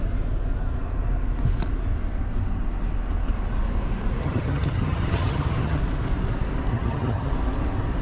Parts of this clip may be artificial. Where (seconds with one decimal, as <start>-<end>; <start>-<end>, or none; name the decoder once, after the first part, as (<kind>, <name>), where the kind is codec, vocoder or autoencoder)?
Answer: 4.2-5.8 (vocoder, HiFi-GAN); 6.7-7.3

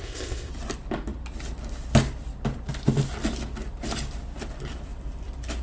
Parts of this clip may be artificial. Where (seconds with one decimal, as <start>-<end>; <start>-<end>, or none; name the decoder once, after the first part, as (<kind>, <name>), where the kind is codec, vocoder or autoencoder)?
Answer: 0.0-0.5 (codec, ZipCodec)

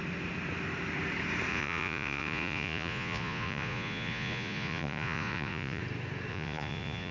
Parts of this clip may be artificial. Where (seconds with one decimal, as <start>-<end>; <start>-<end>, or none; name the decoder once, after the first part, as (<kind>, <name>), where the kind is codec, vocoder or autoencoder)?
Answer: 1.5-5.8 (vocoder, Vocos); 6.3-7.1

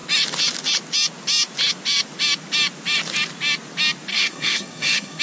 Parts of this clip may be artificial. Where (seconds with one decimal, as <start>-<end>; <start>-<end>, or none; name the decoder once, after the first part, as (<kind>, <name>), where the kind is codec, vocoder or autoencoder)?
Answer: 4.1-5.2 (codec, SNAC)

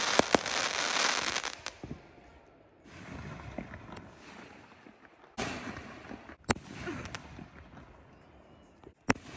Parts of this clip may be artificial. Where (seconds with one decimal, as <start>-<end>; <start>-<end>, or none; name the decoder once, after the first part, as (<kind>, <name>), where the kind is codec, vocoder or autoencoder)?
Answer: none

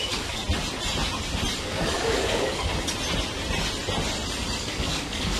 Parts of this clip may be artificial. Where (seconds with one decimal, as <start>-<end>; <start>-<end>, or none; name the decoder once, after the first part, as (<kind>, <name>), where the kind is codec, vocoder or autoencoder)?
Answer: 0.0-0.4 (codec, DAC); 1.6-2.7; 4.6-5.4